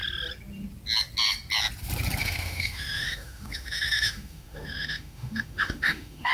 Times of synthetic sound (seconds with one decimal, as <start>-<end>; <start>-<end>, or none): 2.2-6.3